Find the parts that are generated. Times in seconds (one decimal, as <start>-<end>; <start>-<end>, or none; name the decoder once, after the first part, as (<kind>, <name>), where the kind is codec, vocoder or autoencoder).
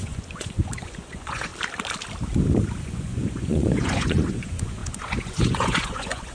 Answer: 0.0-1.5 (vocoder, Vocos); 2.8-6.3